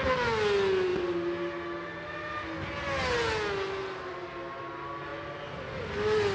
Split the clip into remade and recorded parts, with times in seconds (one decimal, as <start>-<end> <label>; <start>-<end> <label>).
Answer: 0.0-6.3 recorded